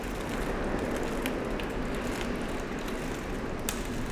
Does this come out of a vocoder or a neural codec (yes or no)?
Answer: no